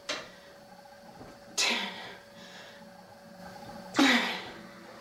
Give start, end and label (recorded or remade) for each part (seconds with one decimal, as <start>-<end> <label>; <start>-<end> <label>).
0.0-5.0 recorded